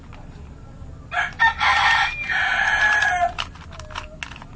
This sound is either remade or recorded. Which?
recorded